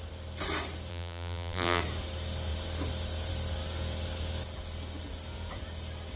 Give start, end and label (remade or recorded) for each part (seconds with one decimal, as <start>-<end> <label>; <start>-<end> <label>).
0.0-0.9 recorded; 0.9-1.8 remade; 1.8-6.2 recorded